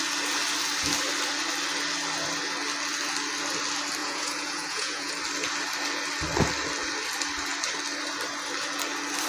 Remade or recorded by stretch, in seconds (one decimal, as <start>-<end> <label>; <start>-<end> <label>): 0.0-4.0 recorded; 4.0-5.1 remade; 5.1-9.3 recorded